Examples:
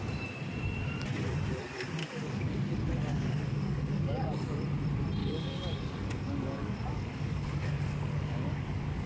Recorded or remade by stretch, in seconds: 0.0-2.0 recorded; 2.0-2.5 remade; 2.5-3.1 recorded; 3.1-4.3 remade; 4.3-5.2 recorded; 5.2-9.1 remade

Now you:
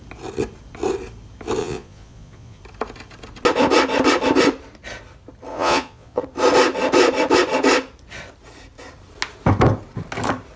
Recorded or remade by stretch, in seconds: 0.0-1.6 recorded; 1.6-2.6 remade; 2.6-5.5 recorded; 5.5-6.2 remade; 6.2-10.6 recorded

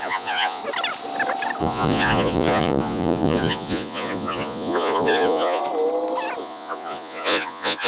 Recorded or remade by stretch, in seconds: 0.0-0.6 remade; 0.6-1.6 recorded; 1.6-5.6 remade; 5.6-6.4 recorded; 6.4-7.9 remade

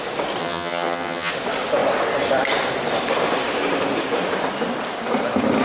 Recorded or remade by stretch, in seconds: 0.0-0.4 recorded; 0.4-1.3 remade; 1.3-5.6 recorded

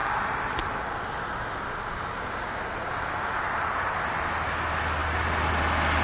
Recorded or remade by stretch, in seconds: 0.0-6.0 recorded